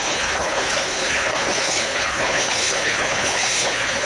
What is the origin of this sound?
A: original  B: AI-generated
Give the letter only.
B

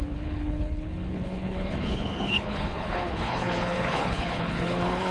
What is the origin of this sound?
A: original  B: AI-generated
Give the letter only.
B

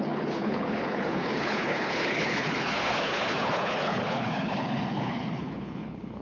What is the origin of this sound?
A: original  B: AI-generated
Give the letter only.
B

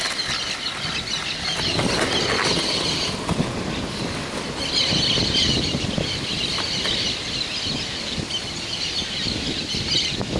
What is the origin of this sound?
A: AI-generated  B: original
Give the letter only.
B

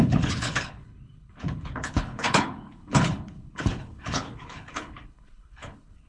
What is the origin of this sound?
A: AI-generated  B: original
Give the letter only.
A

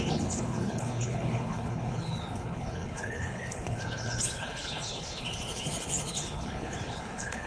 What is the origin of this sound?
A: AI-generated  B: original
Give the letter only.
A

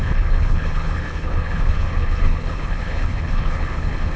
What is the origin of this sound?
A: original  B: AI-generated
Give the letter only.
B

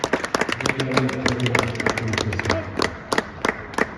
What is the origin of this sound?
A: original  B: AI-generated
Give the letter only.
A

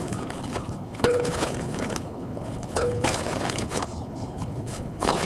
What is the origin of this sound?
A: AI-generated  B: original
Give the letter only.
A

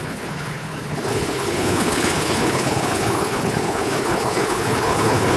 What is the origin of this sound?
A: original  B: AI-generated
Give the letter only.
B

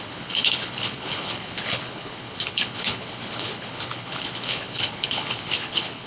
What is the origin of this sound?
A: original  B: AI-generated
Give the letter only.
B